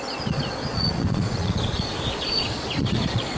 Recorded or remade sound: remade